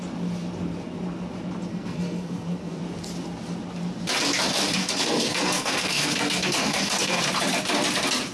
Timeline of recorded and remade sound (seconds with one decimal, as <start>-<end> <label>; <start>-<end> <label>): 0.0-1.7 recorded; 1.7-2.8 remade; 2.8-4.8 recorded; 4.8-7.2 remade; 7.2-8.3 recorded